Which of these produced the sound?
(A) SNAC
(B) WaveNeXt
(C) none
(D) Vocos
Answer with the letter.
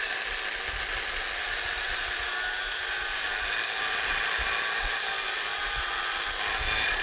C